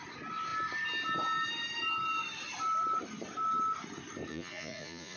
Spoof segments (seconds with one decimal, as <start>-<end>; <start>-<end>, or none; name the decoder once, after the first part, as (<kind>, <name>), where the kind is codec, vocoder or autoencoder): 4.3-5.2 (vocoder, Vocos)